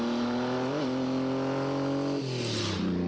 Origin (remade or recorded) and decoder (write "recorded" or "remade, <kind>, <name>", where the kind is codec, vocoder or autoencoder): recorded